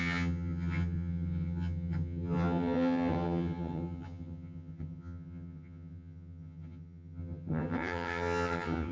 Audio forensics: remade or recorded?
remade